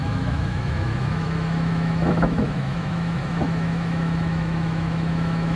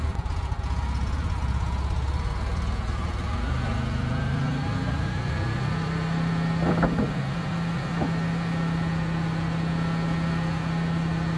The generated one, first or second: first